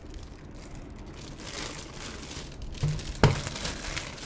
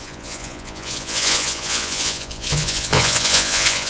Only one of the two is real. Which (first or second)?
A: first